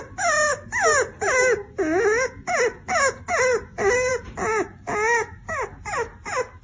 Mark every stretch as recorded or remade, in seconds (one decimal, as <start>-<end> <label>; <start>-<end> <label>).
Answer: 0.0-6.6 recorded